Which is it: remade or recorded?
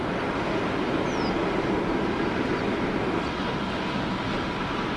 recorded